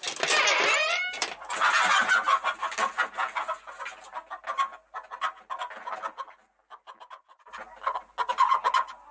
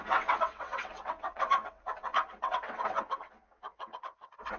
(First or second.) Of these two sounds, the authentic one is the first